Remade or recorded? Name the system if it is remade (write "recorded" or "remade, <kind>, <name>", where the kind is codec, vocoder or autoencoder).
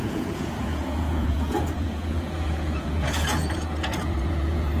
remade, vocoder, Vocos